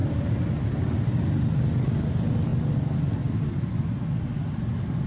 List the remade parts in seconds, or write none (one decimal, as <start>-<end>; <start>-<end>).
none